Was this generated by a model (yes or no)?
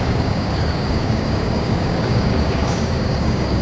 yes